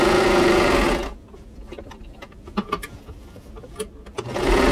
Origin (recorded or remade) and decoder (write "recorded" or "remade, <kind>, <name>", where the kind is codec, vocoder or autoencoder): recorded